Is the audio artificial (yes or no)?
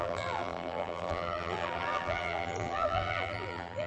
yes